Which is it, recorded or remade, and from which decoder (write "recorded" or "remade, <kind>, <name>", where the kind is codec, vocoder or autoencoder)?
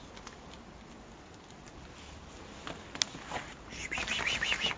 recorded